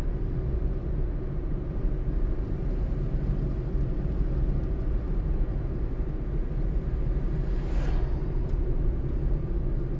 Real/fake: real